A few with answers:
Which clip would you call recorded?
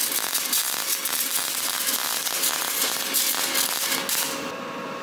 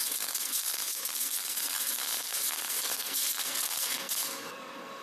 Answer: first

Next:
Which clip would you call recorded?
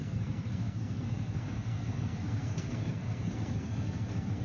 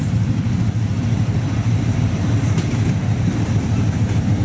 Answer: second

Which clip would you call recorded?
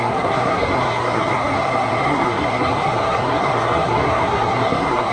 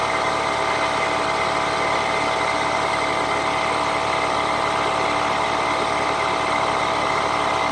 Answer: second